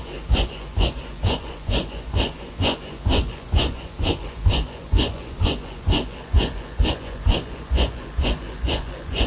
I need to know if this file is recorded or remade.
remade